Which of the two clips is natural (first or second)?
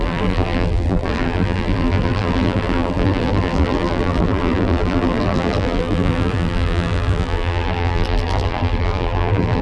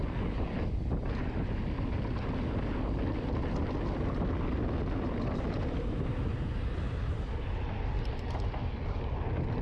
second